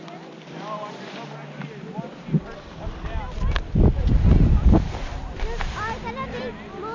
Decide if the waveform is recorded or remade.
recorded